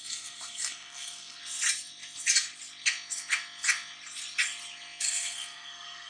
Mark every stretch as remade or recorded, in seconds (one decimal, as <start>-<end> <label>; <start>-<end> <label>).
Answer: 0.0-1.4 remade; 1.4-5.0 recorded; 5.0-6.1 remade